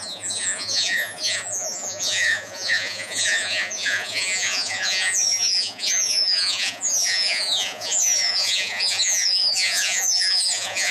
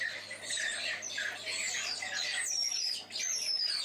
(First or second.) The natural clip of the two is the second